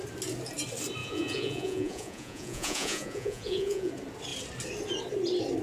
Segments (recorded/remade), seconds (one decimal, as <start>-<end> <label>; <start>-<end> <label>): 0.0-1.0 recorded; 1.0-3.9 remade; 3.9-5.6 recorded